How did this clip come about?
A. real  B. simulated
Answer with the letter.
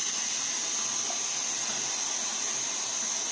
A